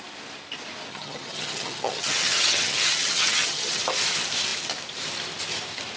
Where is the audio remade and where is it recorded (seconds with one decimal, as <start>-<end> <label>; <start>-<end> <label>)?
0.0-0.9 recorded; 0.9-3.8 remade; 3.8-6.0 recorded